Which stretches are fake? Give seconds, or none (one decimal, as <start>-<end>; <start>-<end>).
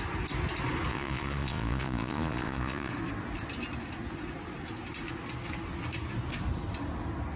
0.9-2.9